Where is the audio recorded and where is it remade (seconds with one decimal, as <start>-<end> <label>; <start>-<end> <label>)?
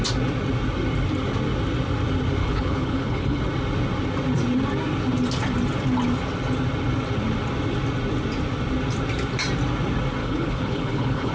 0.0-2.4 recorded; 2.4-3.4 remade; 3.4-10.2 recorded; 10.2-11.3 remade